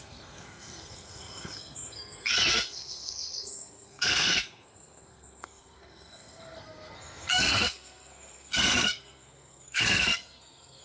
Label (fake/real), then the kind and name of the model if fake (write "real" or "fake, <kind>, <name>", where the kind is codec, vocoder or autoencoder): fake, codec, SNAC